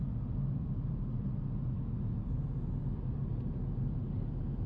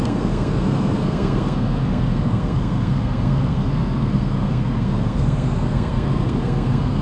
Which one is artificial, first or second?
second